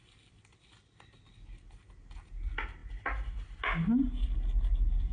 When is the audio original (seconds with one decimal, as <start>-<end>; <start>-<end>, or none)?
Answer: 0.0-5.1